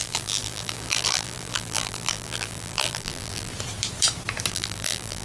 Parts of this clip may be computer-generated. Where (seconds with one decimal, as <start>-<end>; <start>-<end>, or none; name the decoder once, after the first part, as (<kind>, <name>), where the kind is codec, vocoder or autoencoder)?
0.0-3.5 (vocoder, BigVGAN v2); 4.5-5.2